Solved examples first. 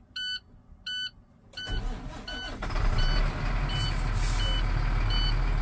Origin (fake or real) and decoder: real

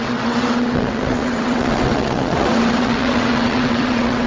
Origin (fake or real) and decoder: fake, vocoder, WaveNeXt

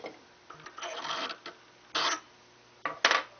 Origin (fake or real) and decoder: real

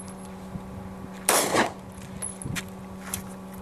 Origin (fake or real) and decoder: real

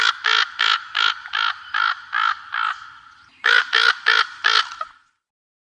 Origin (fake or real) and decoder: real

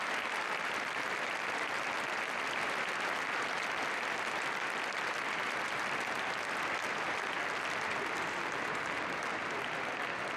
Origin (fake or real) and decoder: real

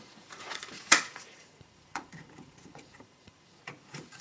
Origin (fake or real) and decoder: fake, vocoder, Vocos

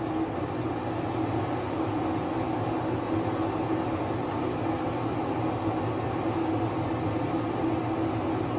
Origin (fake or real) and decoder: real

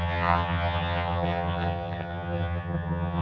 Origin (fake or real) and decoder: fake, vocoder, HiFi-GAN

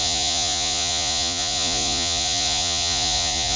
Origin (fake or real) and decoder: fake, vocoder, Vocos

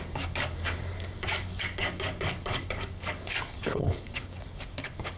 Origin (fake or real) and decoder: fake, codec, DAC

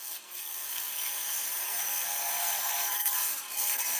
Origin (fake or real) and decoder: fake, codec, SNAC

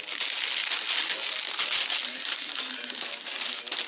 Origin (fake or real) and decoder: real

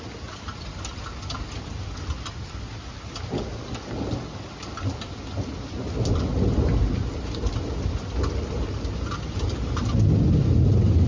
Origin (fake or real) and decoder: real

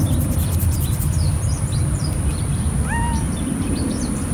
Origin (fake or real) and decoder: fake, vocoder, BigVGAN v2